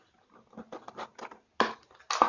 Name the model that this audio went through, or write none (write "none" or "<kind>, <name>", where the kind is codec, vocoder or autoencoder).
none